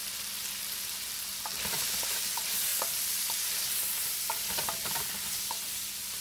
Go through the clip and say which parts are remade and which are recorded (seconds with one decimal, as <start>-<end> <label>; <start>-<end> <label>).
0.0-2.7 recorded; 2.7-3.6 remade; 3.6-6.2 recorded